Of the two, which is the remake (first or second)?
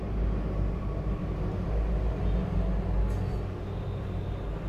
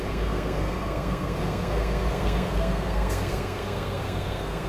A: second